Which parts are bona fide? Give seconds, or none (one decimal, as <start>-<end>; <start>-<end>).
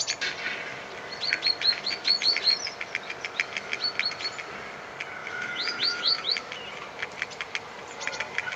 0.0-5.2; 6.5-8.6